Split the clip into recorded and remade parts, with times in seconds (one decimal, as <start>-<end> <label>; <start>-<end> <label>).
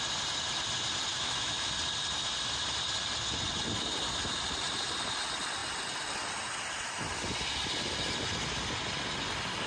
0.0-1.1 recorded; 1.1-1.7 remade; 1.7-9.7 recorded